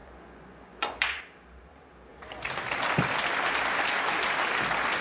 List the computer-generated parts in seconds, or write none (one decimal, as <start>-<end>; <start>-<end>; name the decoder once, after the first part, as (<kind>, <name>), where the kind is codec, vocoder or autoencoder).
0.0-1.2 (vocoder, Vocos)

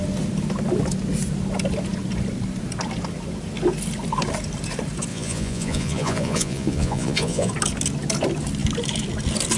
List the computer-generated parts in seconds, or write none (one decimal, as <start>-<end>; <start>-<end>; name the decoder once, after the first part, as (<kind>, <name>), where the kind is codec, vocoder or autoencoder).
5.1-7.5 (vocoder, Vocos)

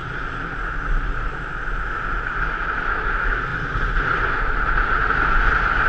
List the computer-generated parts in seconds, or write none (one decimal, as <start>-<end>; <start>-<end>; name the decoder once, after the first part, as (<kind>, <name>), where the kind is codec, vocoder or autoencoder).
none

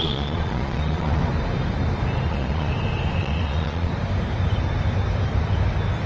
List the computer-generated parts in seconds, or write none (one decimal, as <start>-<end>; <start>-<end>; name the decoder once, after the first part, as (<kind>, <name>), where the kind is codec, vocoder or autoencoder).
0.0-1.2 (vocoder, Vocos); 2.3-2.7; 3.2-3.9